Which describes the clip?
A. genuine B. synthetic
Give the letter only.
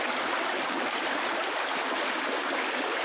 A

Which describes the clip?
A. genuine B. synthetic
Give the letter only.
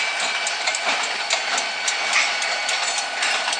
A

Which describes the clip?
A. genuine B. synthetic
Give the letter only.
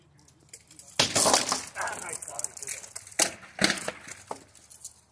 A